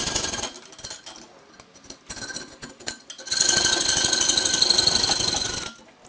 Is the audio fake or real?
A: real